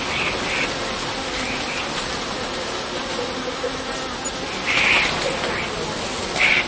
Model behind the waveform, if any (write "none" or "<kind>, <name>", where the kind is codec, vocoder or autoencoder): none